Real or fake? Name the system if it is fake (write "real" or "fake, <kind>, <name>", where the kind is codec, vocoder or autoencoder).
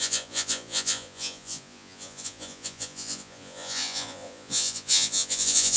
fake, vocoder, Vocos